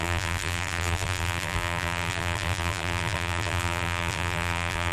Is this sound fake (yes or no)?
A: yes